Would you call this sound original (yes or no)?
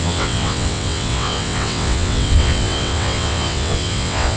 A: no